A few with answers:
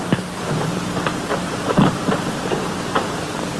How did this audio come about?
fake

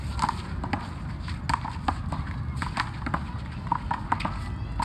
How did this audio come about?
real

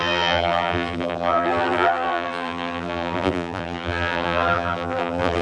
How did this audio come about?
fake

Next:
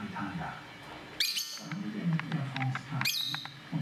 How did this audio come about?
real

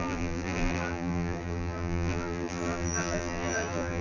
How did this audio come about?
fake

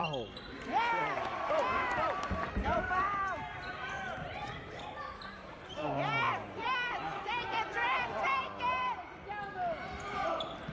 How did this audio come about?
fake